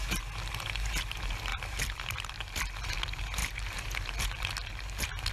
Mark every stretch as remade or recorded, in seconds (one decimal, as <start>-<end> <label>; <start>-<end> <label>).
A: 0.0-1.5 recorded; 1.5-2.3 remade; 2.3-5.3 recorded